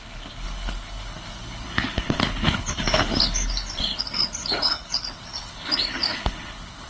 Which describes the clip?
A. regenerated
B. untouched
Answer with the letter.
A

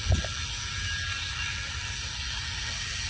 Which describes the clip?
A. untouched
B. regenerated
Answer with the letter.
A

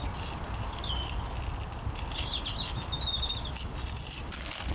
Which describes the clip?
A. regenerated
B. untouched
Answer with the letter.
B